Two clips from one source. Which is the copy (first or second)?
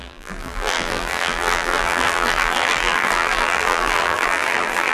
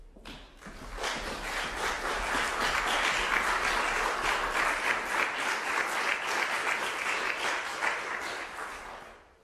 first